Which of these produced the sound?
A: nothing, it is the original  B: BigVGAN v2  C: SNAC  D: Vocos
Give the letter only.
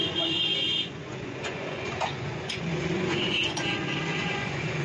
D